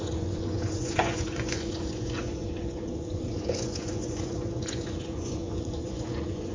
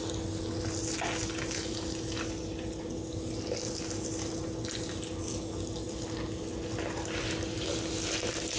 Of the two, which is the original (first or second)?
second